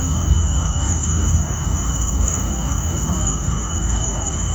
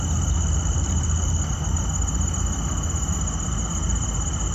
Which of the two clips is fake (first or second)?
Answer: first